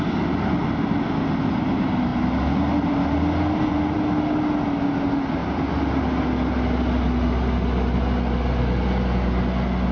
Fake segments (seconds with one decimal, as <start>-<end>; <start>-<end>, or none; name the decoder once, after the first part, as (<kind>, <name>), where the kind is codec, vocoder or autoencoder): 5.4-6.1 (vocoder, BigVGAN v2)